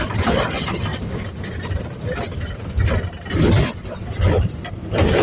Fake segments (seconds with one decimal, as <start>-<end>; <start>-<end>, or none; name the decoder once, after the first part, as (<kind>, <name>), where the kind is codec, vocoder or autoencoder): 0.0-5.2 (vocoder, BigVGAN v2)